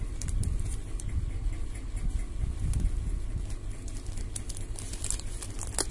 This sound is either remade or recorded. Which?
recorded